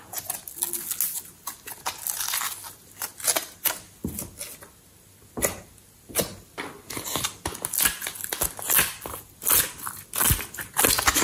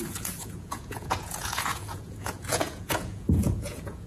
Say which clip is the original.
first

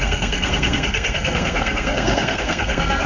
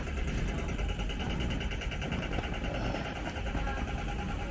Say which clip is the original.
second